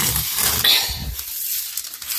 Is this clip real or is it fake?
real